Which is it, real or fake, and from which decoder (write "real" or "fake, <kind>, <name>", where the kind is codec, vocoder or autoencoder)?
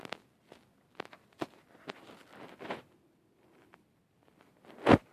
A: real